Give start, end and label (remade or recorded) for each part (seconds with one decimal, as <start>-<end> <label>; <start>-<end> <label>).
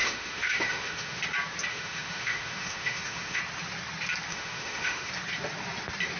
0.0-1.2 remade; 1.2-1.7 recorded; 1.7-3.4 remade; 3.4-4.3 recorded; 4.3-5.1 remade; 5.1-6.2 recorded